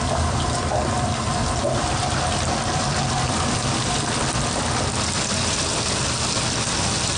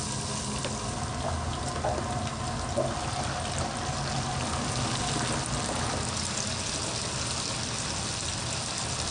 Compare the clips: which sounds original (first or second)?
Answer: second